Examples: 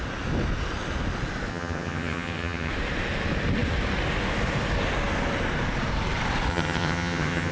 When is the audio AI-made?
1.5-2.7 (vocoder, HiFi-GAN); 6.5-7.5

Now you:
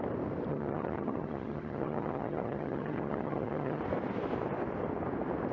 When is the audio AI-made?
0.5-3.8 (vocoder, HiFi-GAN)

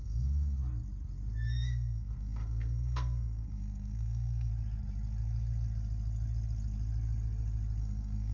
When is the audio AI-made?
0.0-0.6 (codec, SNAC); 1.6-4.5; 7.8-8.3

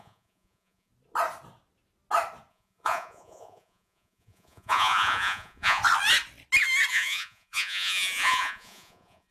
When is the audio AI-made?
0.0-0.9 (vocoder, Vocos); 2.5-5.8; 6.9-9.3

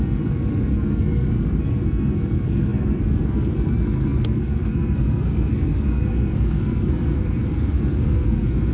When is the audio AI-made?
0.0-8.7 (codec, SNAC)

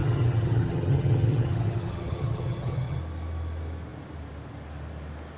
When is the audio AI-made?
0.0-3.0 (vocoder, HiFi-GAN)

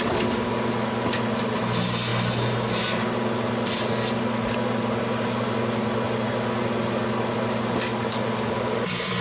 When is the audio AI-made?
none

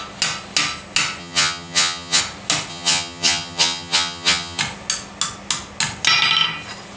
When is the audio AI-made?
1.2-2.2 (vocoder, HiFi-GAN); 2.7-4.6